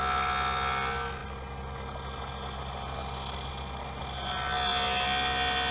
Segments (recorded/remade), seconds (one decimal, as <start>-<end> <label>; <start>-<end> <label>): 0.0-5.7 recorded